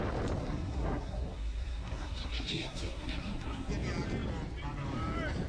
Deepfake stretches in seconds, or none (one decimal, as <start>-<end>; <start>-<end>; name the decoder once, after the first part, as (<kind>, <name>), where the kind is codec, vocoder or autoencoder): 0.4-3.7 (codec, SNAC)